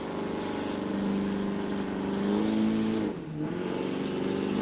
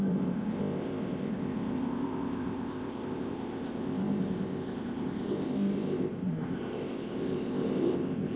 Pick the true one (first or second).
first